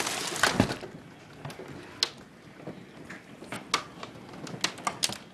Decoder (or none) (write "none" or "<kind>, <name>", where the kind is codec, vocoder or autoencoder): none